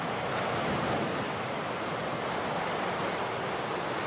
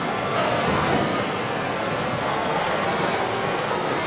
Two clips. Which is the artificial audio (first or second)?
second